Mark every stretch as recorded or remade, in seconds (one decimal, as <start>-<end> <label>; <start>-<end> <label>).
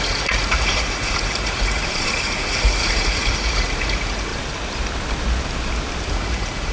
0.0-4.3 remade; 4.3-6.1 recorded; 6.1-6.7 remade